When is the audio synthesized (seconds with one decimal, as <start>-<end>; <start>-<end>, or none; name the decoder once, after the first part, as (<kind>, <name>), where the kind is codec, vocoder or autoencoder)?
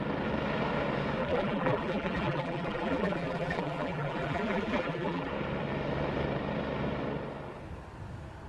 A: 1.2-5.3 (vocoder, BigVGAN v2)